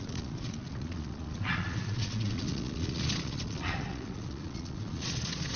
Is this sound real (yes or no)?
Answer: no